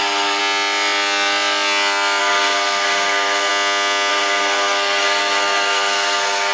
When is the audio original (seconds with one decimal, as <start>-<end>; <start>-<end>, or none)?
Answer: 0.4-2.2; 3.5-4.1